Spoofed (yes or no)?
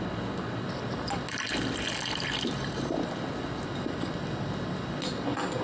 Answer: no